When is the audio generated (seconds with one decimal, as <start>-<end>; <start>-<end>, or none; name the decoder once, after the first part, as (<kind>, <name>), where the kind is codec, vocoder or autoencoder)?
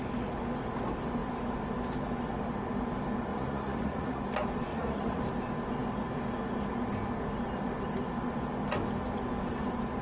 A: 3.3-4.2 (vocoder, Vocos); 4.7-5.2